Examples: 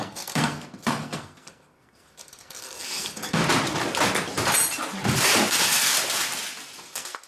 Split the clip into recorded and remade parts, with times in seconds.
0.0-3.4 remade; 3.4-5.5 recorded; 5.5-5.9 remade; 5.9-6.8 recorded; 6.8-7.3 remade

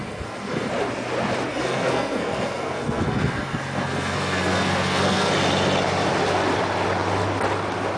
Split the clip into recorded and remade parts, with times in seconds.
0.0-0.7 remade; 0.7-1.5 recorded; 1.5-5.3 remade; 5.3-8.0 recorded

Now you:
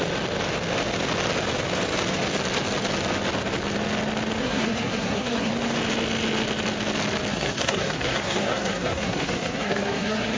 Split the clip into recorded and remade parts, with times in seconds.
0.0-4.4 recorded; 4.4-5.5 remade; 5.5-7.3 recorded; 7.3-10.4 remade

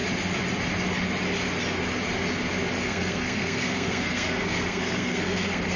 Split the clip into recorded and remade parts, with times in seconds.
0.0-2.8 recorded; 2.8-5.8 remade

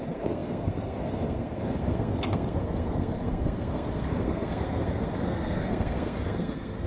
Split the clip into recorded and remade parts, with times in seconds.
0.0-6.9 remade

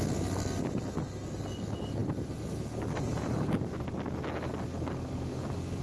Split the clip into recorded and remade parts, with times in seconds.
0.0-5.8 recorded

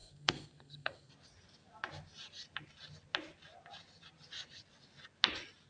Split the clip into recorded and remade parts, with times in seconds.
0.0-1.1 remade; 1.1-5.7 recorded